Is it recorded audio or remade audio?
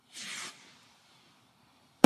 recorded